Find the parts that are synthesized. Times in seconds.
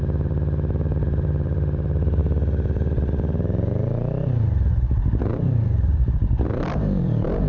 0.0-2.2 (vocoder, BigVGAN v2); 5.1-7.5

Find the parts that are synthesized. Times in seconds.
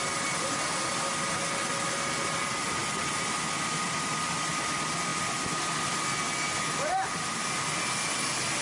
none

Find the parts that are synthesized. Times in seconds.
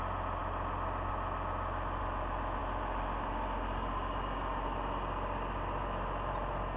none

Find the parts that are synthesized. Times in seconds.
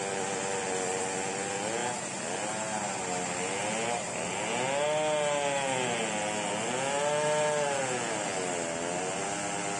none